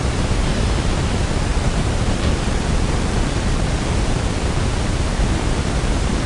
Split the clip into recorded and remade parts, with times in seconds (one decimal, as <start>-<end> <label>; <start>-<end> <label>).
0.0-1.5 recorded; 1.5-4.3 remade; 4.3-6.3 recorded